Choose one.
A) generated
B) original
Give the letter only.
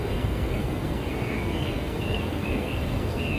A